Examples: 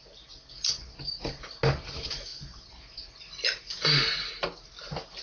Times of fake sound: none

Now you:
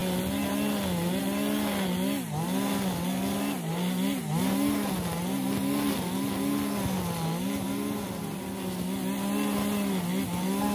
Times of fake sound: none

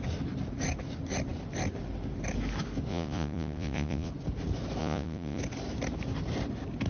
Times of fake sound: 2.9-4.1 (vocoder, Vocos); 4.8-5.4

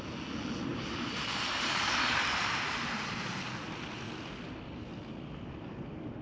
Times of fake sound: 0.7-3.3 (vocoder, BigVGAN v2)

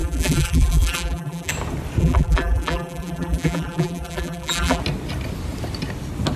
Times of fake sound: 0.0-1.5 (vocoder, BigVGAN v2); 2.0-4.8

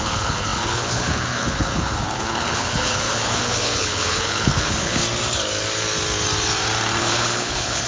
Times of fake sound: 0.0-5.0 (codec, HILCodec); 7.0-7.9

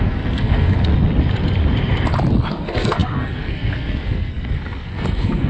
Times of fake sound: 0.0-0.9 (codec, SNAC); 2.5-5.5